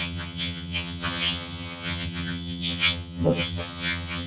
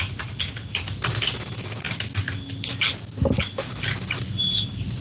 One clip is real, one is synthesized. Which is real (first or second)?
second